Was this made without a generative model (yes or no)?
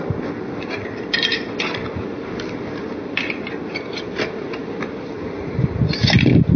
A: yes